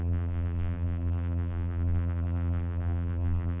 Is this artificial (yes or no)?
yes